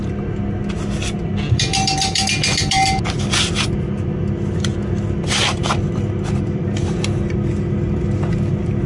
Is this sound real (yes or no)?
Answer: yes